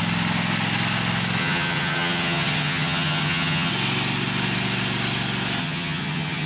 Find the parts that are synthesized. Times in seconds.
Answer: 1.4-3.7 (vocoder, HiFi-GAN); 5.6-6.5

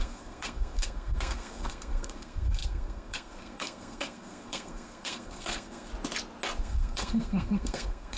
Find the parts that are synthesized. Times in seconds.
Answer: 0.0-5.9 (codec, SNAC); 6.6-8.2